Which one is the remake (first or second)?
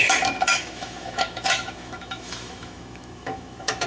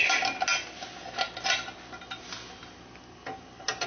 first